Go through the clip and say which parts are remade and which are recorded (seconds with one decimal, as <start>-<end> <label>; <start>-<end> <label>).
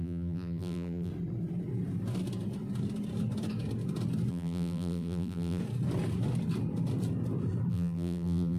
0.0-1.1 remade; 1.1-4.3 recorded; 4.3-5.6 remade; 5.6-7.7 recorded; 7.7-8.6 remade